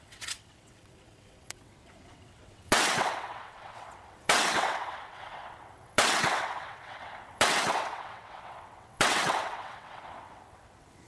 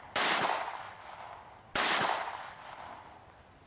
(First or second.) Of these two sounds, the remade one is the first